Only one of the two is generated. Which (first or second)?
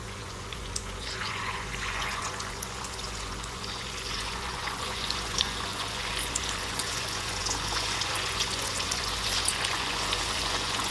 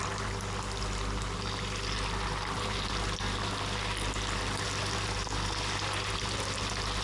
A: first